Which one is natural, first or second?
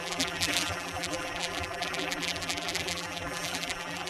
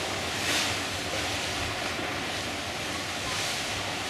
second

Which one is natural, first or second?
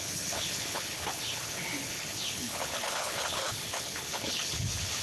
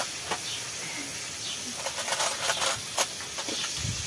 second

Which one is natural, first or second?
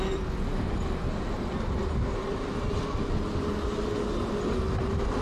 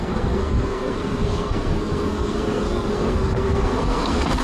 first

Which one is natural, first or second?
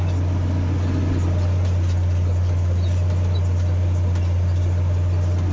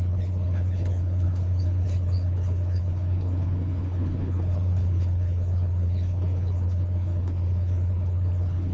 first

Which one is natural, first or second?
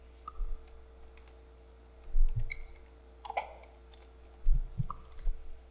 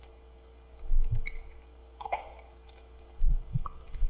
first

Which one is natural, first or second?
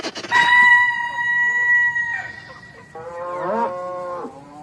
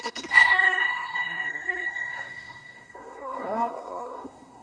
first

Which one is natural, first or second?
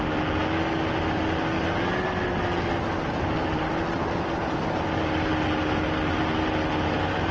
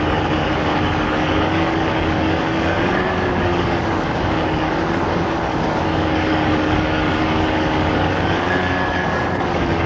first